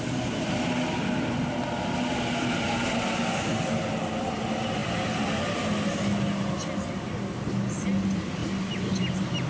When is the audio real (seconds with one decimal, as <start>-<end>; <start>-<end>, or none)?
0.0-9.5